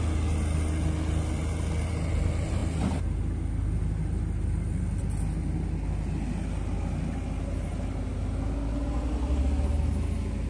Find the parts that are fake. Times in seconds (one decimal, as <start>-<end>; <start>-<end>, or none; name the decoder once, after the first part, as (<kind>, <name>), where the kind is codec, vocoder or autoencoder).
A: none